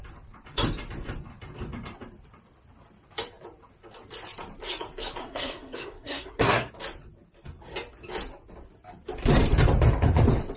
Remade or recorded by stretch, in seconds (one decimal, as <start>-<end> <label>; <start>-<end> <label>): 0.0-5.2 recorded; 5.2-6.7 remade; 6.7-10.6 recorded